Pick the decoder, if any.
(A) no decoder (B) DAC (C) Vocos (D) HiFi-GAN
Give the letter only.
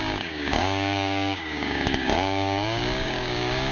B